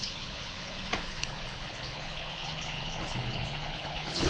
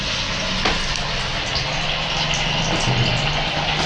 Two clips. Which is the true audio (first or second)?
second